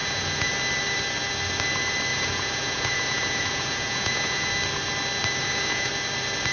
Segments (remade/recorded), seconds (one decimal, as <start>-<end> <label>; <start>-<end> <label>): 0.0-0.5 remade; 0.5-2.1 recorded; 2.1-4.5 remade; 4.5-5.4 recorded; 5.4-5.9 remade; 5.9-6.5 recorded